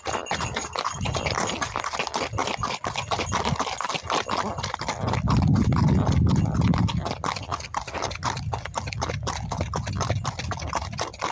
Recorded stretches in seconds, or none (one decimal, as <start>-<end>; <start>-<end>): 0.0-11.3